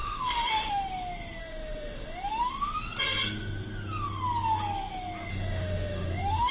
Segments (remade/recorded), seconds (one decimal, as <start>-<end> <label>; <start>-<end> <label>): 0.0-0.9 remade; 0.9-1.4 recorded; 1.4-2.5 remade; 2.5-5.3 recorded; 5.3-6.5 remade